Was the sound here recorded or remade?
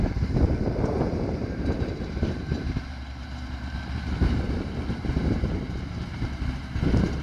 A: remade